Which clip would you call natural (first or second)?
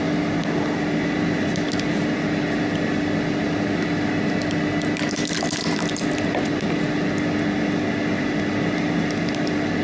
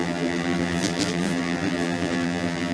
first